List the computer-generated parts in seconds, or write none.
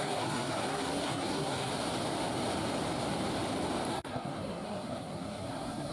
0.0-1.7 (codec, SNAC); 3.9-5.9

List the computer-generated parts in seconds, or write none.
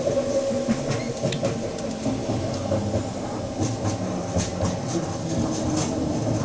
none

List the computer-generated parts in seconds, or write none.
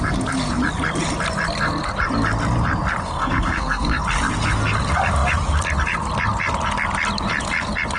3.0-4.0 (codec, SNAC)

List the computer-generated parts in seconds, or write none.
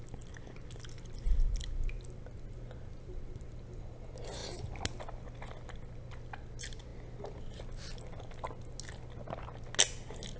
none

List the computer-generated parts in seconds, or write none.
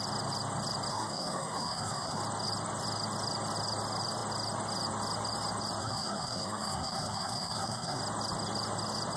0.9-2.2 (codec, SNAC); 5.8-8.0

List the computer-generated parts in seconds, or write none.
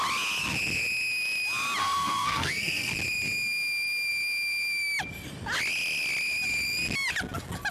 1.8-2.9 (codec, SNAC)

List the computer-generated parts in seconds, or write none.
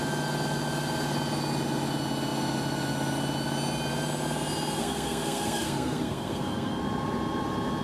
4.8-6.8 (codec, SNAC)